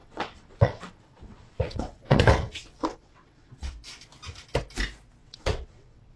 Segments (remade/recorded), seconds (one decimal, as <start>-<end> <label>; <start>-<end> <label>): 0.0-2.5 remade; 2.5-2.9 recorded; 2.9-3.7 remade; 3.7-5.2 recorded; 5.2-6.2 remade